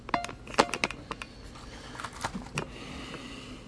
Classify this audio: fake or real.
real